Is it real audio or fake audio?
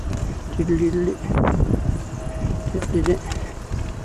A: real